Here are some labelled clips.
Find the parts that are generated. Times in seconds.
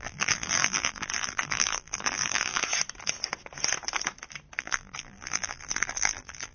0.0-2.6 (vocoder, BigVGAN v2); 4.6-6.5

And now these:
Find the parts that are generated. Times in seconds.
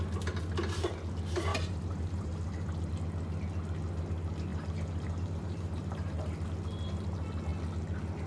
1.5-2.9 (vocoder, BigVGAN v2); 4.5-6.5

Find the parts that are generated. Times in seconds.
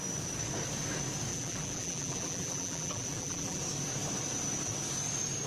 1.3-3.6 (vocoder, BigVGAN v2)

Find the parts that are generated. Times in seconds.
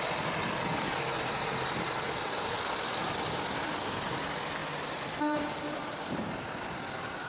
4.6-6.4 (vocoder, BigVGAN v2)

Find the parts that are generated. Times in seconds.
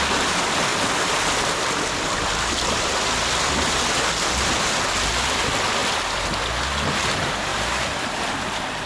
0.7-4.1 (vocoder, BigVGAN v2); 7.5-8.3